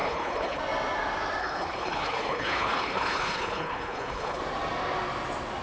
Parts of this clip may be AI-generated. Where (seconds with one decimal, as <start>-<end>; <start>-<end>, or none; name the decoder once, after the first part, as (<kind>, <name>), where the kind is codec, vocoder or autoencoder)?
0.0-0.6 (codec, HILCodec); 1.4-4.4